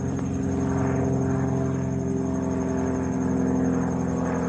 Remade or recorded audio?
recorded